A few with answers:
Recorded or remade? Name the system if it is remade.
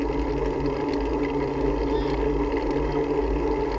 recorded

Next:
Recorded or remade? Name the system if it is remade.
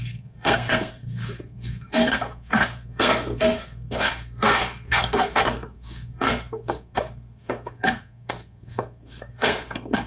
remade, codec, SNAC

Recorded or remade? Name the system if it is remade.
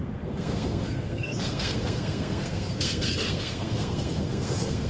remade, codec, SNAC